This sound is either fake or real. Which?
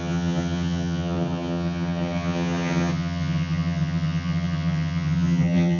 fake